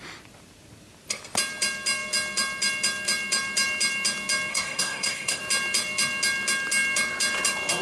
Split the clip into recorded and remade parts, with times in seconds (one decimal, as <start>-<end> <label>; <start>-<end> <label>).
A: 0.0-4.5 recorded; 4.5-5.4 remade; 5.4-7.8 recorded